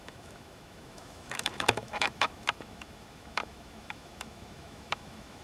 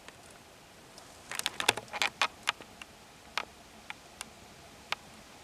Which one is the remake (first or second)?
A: first